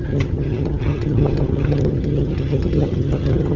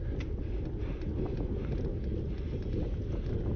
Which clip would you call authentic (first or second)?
second